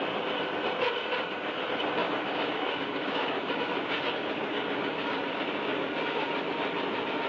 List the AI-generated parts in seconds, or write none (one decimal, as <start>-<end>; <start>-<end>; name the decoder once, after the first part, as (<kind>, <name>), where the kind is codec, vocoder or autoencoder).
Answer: 2.0-6.0 (codec, DAC)